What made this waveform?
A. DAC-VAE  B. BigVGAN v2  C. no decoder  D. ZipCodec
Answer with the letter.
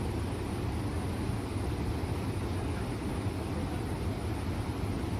C